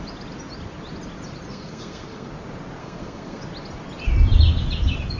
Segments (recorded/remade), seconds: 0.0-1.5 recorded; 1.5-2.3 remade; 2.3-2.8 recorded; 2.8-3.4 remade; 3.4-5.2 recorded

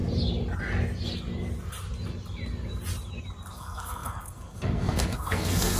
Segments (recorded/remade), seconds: 0.0-3.5 recorded; 3.5-5.8 remade

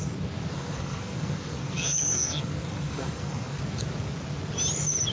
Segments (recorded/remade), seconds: 0.0-0.5 recorded; 0.5-3.6 remade; 3.6-5.1 recorded